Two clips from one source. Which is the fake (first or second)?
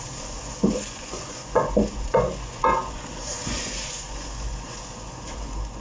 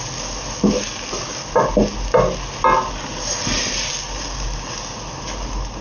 first